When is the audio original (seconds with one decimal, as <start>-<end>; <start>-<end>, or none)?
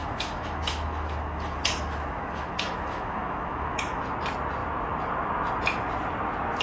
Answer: 4.0-6.6